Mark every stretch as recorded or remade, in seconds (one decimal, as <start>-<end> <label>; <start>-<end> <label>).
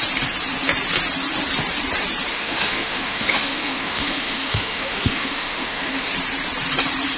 0.0-2.3 recorded; 2.3-6.1 remade; 6.1-7.2 recorded